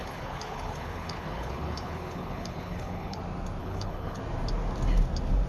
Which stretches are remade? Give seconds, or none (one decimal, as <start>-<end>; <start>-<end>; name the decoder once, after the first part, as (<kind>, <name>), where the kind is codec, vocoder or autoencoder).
0.0-3.2 (codec, HILCodec); 3.6-4.2